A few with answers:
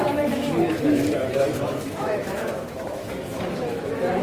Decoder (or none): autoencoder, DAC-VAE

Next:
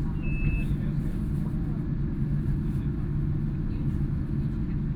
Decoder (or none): none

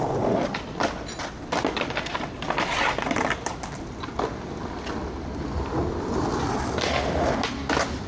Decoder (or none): none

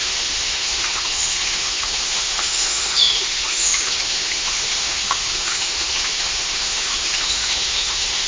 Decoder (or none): autoencoder, DAC-VAE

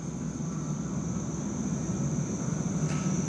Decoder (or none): none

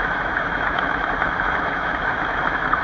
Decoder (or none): autoencoder, DAC-VAE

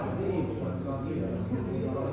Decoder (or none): none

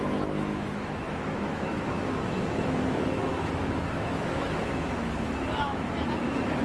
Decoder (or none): autoencoder, DAC-VAE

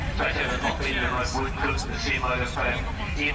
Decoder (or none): none